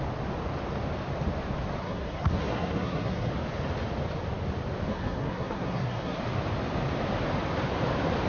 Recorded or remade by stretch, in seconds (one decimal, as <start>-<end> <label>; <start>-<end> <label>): 0.0-1.8 recorded; 1.8-3.3 remade; 3.3-4.9 recorded; 4.9-6.2 remade; 6.2-8.3 recorded